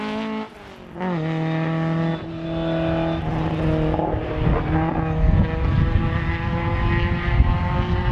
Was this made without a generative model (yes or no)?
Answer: yes